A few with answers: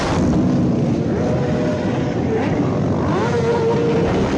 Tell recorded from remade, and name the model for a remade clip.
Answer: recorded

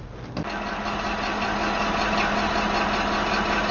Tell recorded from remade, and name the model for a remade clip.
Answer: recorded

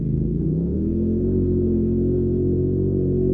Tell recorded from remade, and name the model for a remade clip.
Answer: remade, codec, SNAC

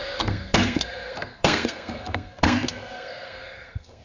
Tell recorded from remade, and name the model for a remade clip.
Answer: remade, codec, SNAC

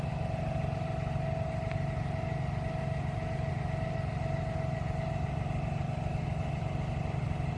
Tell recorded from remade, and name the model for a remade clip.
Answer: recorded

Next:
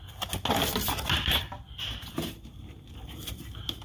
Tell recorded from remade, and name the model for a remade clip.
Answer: recorded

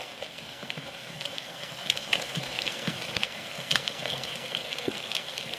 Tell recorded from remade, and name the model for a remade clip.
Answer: remade, codec, SNAC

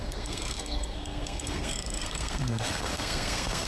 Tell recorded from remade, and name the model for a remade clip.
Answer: remade, codec, SNAC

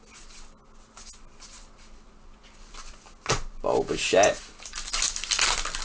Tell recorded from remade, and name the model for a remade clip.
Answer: recorded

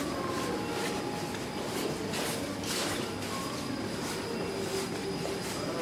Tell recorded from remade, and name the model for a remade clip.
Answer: recorded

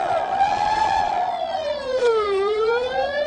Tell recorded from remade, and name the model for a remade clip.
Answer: remade, vocoder, Vocos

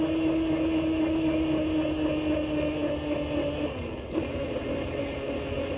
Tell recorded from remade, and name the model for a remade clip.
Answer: recorded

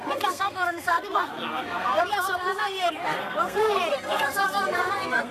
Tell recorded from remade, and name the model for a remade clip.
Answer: remade, codec, SNAC